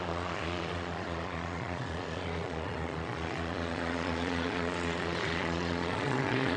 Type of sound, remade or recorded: remade